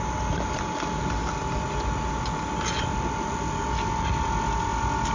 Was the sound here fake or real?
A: real